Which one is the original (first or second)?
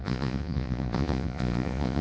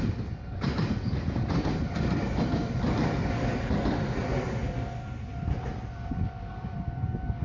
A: second